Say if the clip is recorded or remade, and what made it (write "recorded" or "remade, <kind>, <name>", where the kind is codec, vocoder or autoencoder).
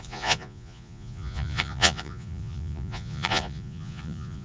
remade, vocoder, Vocos